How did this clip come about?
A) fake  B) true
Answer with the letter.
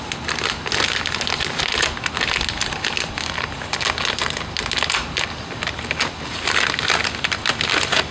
B